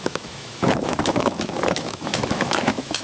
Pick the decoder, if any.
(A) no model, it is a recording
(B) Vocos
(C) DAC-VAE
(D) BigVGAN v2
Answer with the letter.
C